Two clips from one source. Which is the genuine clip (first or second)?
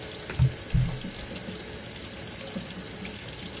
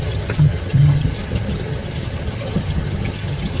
first